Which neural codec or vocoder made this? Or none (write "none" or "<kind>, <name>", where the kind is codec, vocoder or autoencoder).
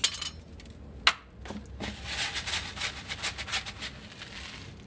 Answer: none